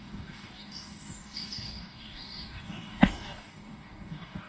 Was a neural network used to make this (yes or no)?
yes